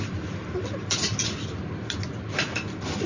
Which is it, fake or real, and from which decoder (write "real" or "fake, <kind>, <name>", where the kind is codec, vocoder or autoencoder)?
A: real